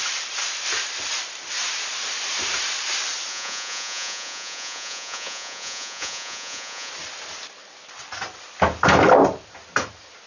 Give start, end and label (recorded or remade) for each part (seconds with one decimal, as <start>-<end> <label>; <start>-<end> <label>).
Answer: 0.0-3.3 recorded; 3.3-6.9 remade; 6.9-10.3 recorded